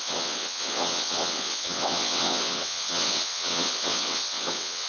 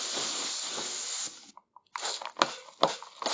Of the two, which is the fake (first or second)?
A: first